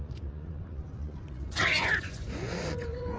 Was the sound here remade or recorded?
remade